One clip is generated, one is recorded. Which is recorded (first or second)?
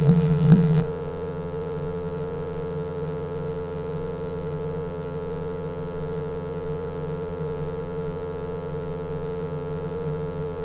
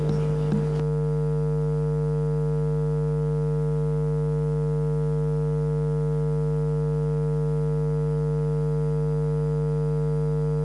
second